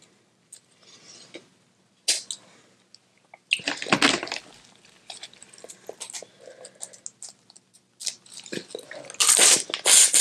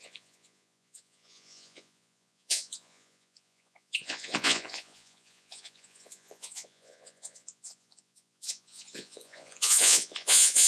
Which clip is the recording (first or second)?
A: first